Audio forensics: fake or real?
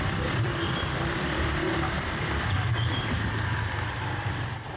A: fake